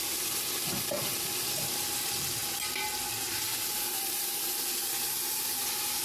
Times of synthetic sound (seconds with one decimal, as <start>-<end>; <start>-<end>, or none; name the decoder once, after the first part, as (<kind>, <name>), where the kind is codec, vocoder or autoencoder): none